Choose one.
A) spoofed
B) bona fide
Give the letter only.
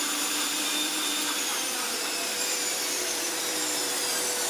A